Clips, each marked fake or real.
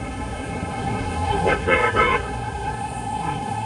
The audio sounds fake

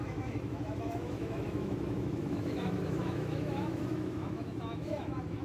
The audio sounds fake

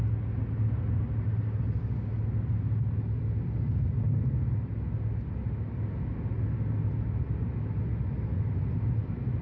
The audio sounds real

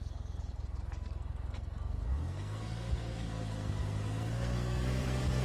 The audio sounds fake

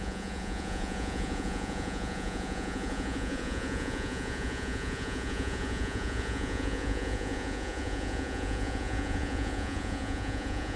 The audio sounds fake